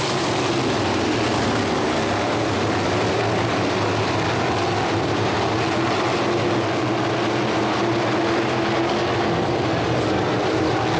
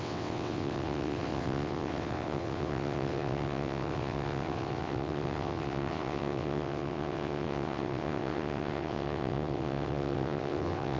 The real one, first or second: first